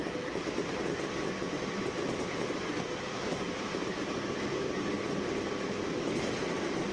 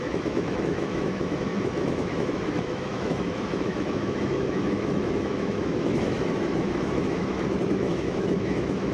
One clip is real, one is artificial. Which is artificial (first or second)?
second